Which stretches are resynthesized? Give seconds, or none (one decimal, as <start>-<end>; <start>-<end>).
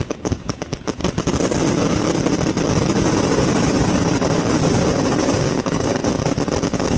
0.0-1.0; 5.2-6.0; 6.6-7.0